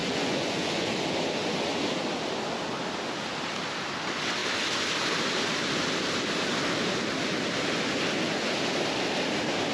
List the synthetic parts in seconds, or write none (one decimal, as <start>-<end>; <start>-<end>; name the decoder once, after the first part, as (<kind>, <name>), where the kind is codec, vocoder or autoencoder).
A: 0.0-0.9 (vocoder, Vocos)